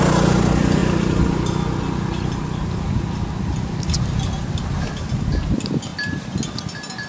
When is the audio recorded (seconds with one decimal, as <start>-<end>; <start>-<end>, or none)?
0.0-7.1